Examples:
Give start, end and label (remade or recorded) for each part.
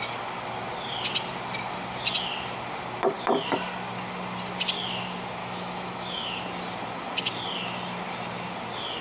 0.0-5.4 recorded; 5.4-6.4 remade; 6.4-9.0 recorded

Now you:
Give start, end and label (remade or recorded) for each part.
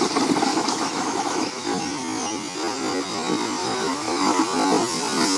0.0-0.5 recorded; 0.5-1.8 remade; 1.8-3.6 recorded; 3.6-4.4 remade; 4.4-5.4 recorded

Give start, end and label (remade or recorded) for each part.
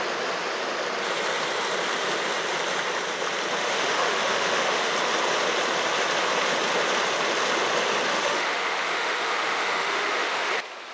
0.0-3.6 recorded; 3.6-4.8 remade; 4.8-8.1 recorded; 8.1-10.5 remade; 10.5-10.9 recorded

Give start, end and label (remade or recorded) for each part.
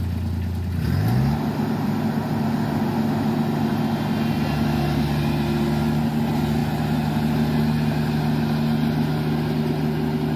0.0-10.4 recorded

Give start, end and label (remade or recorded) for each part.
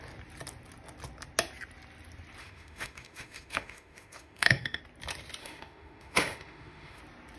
0.0-2.4 recorded; 2.4-4.8 remade; 4.8-5.4 recorded; 5.4-7.0 remade; 7.0-7.4 recorded